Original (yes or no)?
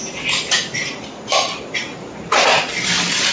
yes